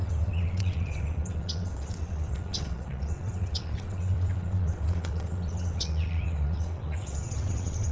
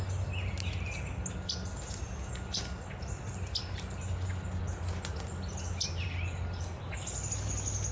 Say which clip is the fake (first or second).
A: first